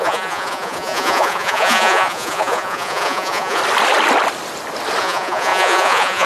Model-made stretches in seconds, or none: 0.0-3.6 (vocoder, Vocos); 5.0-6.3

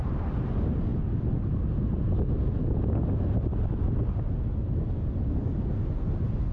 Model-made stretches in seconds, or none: none

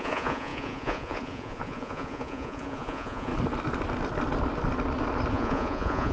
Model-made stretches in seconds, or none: 0.0-3.3 (vocoder, Vocos); 5.3-6.1

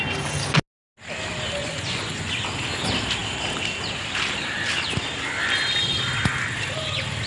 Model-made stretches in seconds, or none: 1.6-2.3 (vocoder, Vocos)

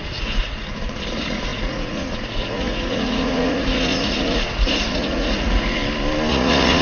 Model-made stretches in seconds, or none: 0.0-5.8 (vocoder, Vocos); 6.3-6.8